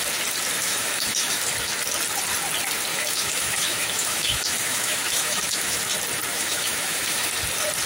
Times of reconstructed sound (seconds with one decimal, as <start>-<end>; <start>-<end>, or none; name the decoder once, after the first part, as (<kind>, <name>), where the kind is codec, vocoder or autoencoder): 0.6-1.4 (autoencoder, DAC-VAE); 2.9-5.8; 6.3-7.3